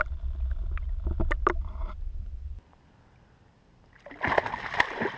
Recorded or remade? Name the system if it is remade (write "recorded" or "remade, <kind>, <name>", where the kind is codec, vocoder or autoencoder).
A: recorded